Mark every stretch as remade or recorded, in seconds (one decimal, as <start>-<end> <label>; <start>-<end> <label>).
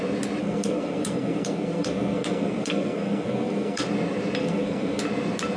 0.0-0.4 recorded; 0.4-3.8 remade; 3.8-4.4 recorded; 4.4-5.0 remade; 5.0-5.6 recorded